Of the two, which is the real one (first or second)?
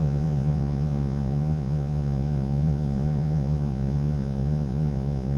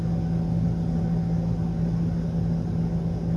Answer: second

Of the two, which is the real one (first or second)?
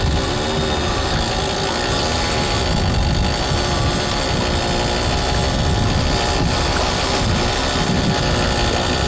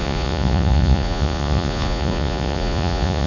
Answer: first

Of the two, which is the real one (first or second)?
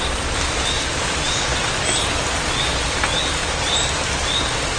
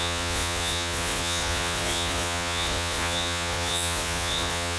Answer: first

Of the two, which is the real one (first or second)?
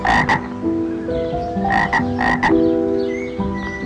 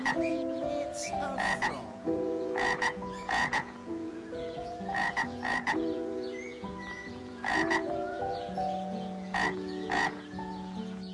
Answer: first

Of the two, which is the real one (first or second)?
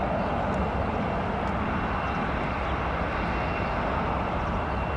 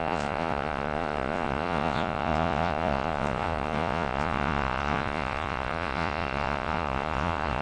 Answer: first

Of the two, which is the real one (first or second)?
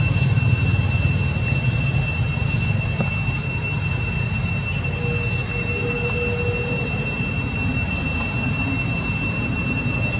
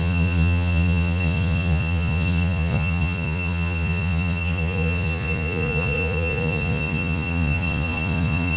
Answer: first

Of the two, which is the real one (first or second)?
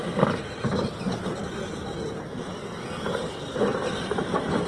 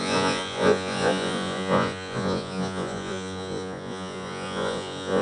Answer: first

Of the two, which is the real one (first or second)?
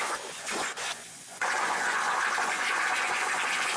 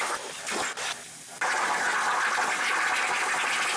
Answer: second